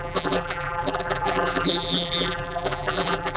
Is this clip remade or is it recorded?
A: remade